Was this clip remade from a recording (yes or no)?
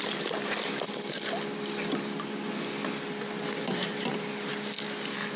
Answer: no